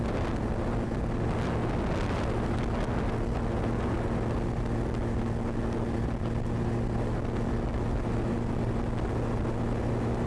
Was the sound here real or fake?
real